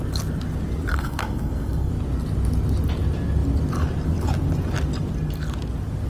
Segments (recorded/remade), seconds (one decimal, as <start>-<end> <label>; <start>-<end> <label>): 0.0-0.9 recorded; 0.9-1.9 remade; 1.9-6.1 recorded